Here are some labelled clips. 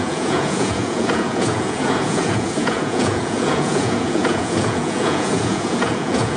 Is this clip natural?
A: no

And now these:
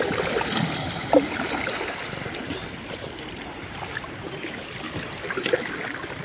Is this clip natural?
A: yes